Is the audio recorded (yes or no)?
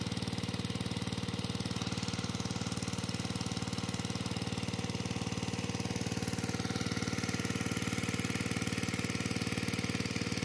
yes